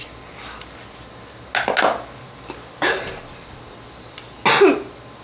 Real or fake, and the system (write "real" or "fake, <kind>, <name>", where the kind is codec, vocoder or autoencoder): real